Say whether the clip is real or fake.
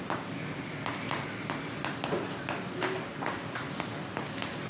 real